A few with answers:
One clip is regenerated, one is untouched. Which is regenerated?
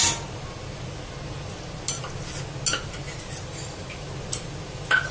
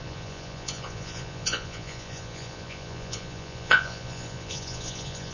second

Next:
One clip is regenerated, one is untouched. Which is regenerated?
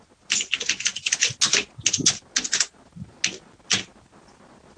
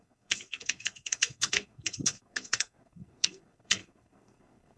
second